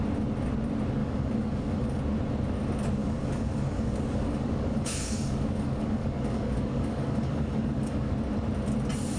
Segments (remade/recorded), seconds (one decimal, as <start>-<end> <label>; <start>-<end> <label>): 0.0-1.0 recorded; 1.0-2.0 remade; 2.0-3.0 recorded; 3.0-8.1 remade; 8.1-9.2 recorded